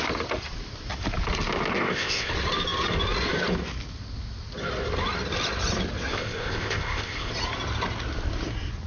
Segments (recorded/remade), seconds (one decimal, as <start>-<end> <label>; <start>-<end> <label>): 0.0-1.7 recorded; 1.7-2.3 remade; 2.3-6.1 recorded; 6.1-7.3 remade; 7.3-8.9 recorded